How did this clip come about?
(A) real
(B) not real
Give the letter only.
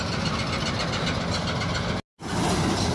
A